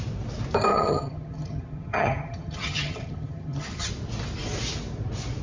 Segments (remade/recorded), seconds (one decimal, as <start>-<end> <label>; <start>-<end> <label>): 0.0-0.7 recorded; 0.7-3.9 remade; 3.9-5.4 recorded